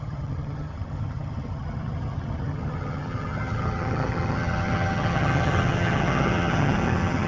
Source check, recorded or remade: remade